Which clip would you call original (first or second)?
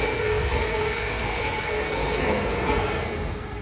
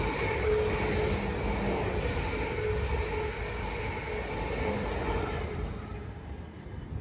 second